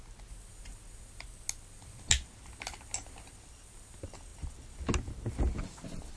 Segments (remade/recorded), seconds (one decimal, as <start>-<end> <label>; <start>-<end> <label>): 0.0-6.2 recorded